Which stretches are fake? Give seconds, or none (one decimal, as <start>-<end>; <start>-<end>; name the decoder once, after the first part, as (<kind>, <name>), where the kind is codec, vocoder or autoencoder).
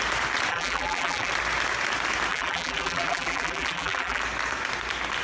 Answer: 0.5-1.3 (vocoder, BigVGAN v2); 2.3-4.2